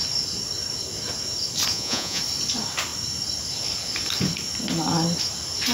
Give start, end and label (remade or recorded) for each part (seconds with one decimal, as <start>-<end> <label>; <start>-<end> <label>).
0.0-1.7 recorded; 1.7-2.2 remade; 2.2-5.7 recorded